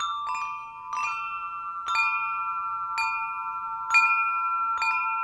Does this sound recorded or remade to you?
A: recorded